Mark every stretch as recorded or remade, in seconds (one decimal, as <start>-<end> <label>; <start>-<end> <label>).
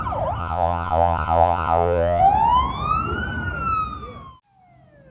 0.0-0.4 recorded; 0.4-2.2 remade; 2.2-5.1 recorded